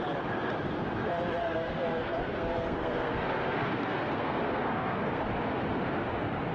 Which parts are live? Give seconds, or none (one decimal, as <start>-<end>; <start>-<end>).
0.0-1.4; 5.2-6.5